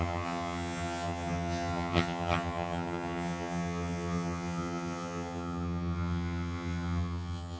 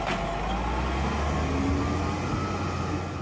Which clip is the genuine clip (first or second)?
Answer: second